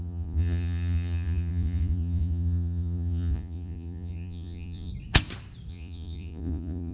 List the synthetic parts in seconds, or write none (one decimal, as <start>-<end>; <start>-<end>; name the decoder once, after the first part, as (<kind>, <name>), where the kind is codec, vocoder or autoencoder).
0.0-4.9 (vocoder, Vocos); 5.7-6.9